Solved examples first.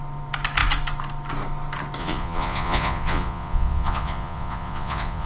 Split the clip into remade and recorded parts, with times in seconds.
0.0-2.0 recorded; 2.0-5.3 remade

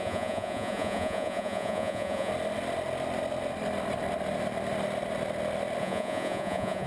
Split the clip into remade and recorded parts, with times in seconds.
0.0-2.3 remade; 2.3-5.8 recorded; 5.8-6.9 remade

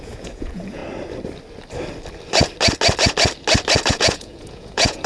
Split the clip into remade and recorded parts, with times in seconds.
0.0-0.8 remade; 0.8-3.9 recorded; 3.9-5.1 remade

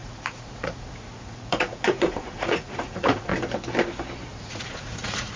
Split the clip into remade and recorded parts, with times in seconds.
0.0-3.3 remade; 3.3-4.2 recorded; 4.2-5.4 remade

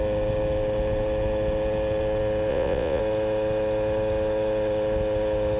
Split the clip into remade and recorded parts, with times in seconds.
0.0-2.5 recorded; 2.5-3.0 remade; 3.0-5.6 recorded

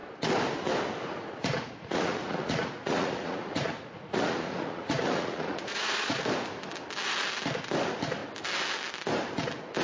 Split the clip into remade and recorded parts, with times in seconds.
0.0-1.1 recorded; 1.1-6.2 remade; 6.2-9.8 recorded

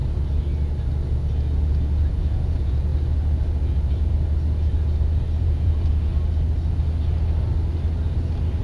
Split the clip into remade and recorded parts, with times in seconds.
0.0-2.1 recorded; 2.1-2.9 remade; 2.9-5.4 recorded; 5.4-6.1 remade; 6.1-8.6 recorded

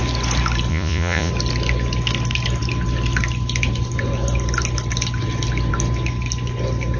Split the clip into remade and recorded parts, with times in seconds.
0.0-0.7 recorded; 0.7-1.3 remade; 1.3-7.0 recorded